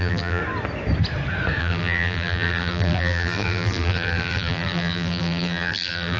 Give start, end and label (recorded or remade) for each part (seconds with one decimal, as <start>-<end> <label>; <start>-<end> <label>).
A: 0.0-0.4 remade; 0.4-1.6 recorded; 1.6-6.2 remade